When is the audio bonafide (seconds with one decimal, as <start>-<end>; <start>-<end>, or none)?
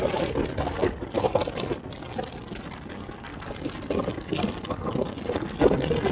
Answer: 0.0-6.1